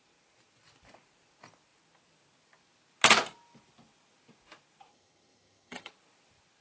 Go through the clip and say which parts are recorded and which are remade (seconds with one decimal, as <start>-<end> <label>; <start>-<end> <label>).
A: 0.0-4.9 recorded; 4.9-5.9 remade; 5.9-6.6 recorded